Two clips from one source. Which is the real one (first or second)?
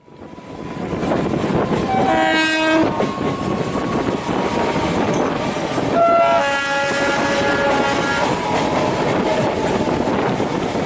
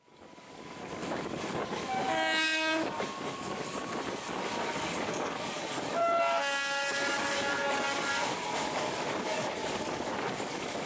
first